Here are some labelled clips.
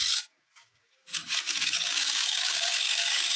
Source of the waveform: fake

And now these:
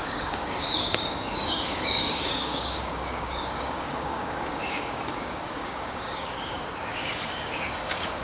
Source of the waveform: fake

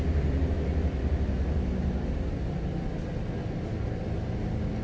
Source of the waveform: real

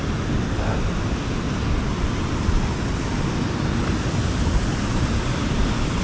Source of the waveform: real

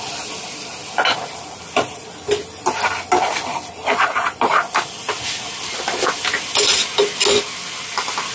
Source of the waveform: real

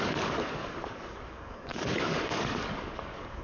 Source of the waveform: fake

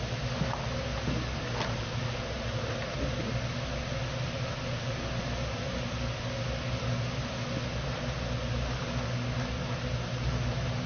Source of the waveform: real